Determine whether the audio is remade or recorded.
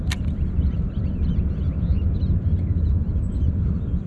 remade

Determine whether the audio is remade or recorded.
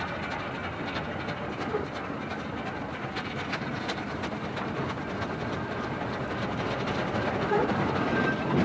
recorded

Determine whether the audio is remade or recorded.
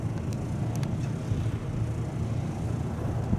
recorded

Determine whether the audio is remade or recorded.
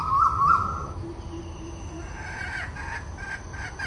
recorded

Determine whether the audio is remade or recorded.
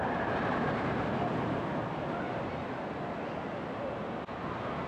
recorded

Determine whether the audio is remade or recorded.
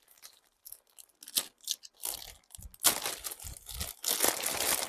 recorded